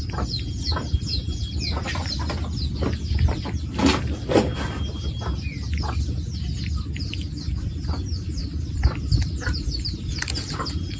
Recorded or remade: recorded